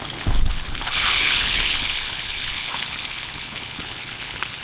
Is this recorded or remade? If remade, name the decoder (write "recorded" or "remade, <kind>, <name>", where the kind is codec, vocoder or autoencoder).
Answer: remade, codec, HILCodec